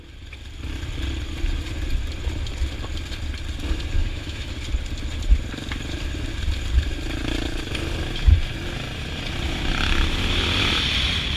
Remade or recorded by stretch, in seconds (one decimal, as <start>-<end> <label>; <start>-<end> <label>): 0.0-4.0 recorded; 4.0-4.5 remade; 4.5-11.4 recorded